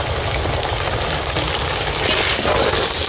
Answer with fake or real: real